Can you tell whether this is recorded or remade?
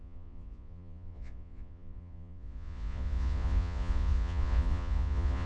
remade